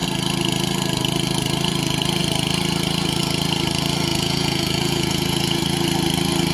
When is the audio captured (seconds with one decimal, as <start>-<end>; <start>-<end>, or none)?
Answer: 0.0-4.1; 5.6-6.5